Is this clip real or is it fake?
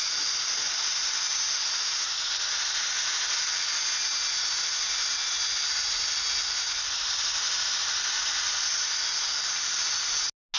real